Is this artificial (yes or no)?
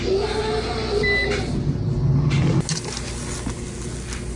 no